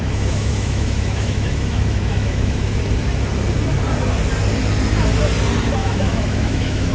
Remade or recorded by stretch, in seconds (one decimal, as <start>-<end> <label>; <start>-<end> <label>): 0.0-2.8 remade; 2.8-5.8 recorded; 5.8-6.9 remade